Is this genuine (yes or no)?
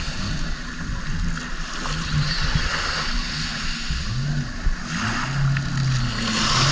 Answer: yes